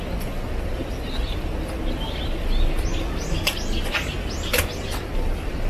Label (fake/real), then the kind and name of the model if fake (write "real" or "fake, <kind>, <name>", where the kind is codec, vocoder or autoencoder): real